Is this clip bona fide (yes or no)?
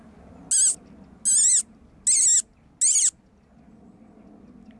yes